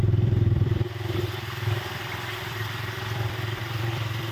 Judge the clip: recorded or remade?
remade